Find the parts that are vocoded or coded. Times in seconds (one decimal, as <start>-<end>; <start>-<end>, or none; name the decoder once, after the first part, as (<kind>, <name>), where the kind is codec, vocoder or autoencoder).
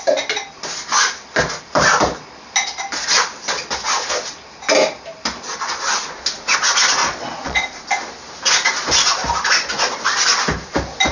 7.0-7.6 (vocoder, Vocos)